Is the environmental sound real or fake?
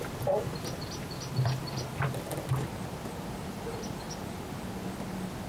real